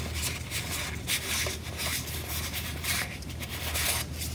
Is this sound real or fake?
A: real